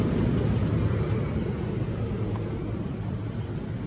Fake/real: real